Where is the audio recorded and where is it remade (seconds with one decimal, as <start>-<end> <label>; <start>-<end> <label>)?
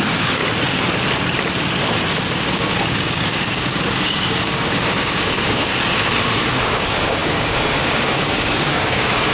0.0-0.4 remade; 0.4-2.4 recorded; 2.4-5.7 remade; 5.7-6.6 recorded; 6.6-9.3 remade